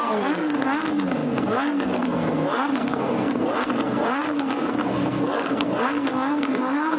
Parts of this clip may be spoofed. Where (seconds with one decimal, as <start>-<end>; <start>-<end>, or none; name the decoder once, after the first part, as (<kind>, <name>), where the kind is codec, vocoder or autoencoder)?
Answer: 0.0-7.0 (codec, SNAC)